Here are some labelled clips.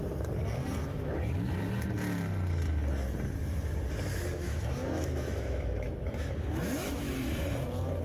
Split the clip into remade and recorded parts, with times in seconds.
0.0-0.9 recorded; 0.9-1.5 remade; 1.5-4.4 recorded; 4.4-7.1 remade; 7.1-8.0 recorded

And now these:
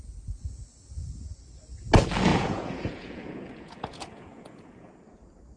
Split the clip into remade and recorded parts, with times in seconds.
0.0-2.3 recorded; 2.3-4.9 remade; 4.9-5.6 recorded